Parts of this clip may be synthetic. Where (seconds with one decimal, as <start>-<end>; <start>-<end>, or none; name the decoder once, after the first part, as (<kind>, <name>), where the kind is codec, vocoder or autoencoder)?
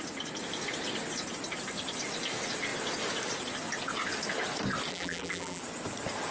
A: 4.9-5.6 (vocoder, BigVGAN v2)